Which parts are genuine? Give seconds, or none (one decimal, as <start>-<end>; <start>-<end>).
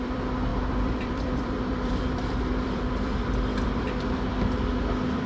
4.3-5.3